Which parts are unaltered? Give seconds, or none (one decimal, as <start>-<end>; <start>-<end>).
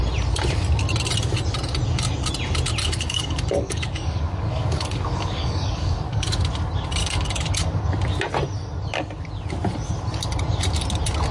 0.0-2.8; 6.4-7.0; 7.8-11.3